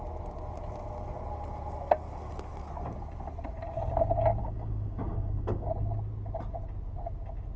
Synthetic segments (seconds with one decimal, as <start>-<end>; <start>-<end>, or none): 4.4-5.7